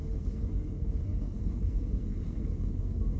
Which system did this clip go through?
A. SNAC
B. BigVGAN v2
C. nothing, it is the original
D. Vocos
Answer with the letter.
A